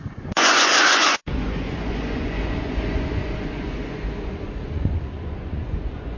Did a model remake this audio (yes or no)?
yes